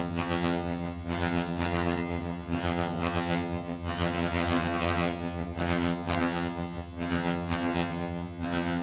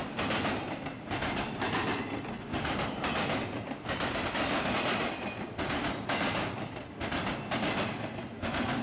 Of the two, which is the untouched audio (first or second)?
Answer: second